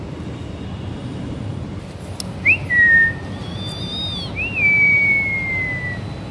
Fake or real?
real